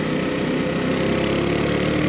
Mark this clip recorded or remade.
recorded